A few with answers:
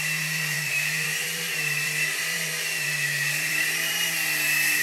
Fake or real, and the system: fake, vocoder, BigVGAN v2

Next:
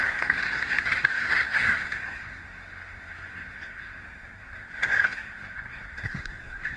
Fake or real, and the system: fake, codec, SNAC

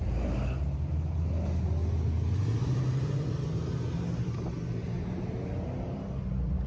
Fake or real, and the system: real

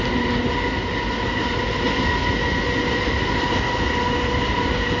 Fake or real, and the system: real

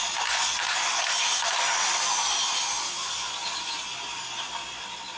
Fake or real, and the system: real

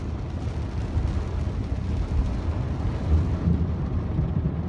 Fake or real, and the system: real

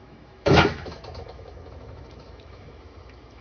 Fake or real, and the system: fake, autoencoder, DAC-VAE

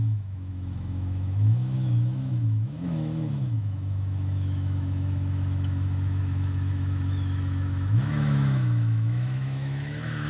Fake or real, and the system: fake, autoencoder, DAC-VAE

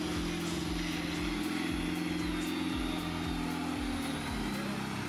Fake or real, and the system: real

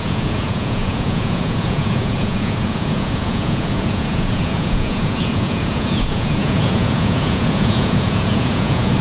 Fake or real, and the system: fake, vocoder, Vocos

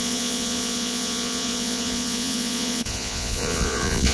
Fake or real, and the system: fake, vocoder, Vocos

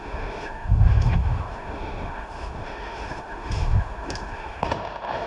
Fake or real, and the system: fake, autoencoder, DAC-VAE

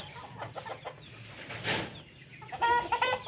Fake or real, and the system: real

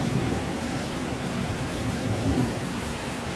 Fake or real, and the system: fake, codec, SNAC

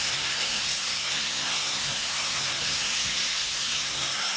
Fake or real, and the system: fake, codec, SNAC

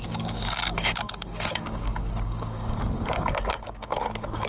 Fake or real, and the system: fake, codec, DAC